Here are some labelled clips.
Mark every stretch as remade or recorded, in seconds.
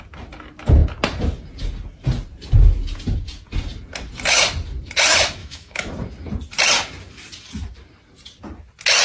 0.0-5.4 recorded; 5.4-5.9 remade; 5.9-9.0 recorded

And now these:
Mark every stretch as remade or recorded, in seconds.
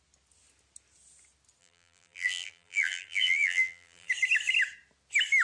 0.0-1.6 recorded; 1.6-4.1 remade; 4.1-5.4 recorded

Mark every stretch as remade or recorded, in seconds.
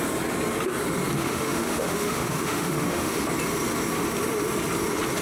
0.0-1.2 recorded; 1.2-3.2 remade; 3.2-5.2 recorded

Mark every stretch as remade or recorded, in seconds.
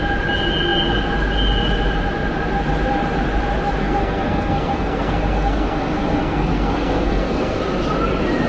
0.0-3.8 recorded; 3.8-7.6 remade; 7.6-8.5 recorded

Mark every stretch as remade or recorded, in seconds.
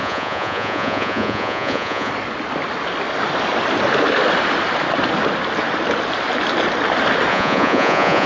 0.0-2.1 remade; 2.1-7.3 recorded; 7.3-8.3 remade